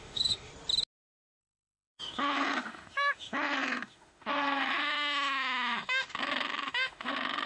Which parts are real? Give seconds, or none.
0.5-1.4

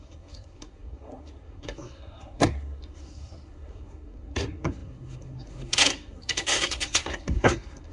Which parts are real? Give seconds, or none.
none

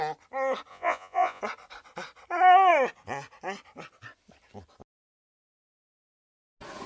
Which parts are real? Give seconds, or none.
0.0-0.7; 1.4-6.9

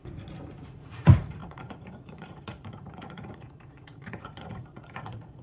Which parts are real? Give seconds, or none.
none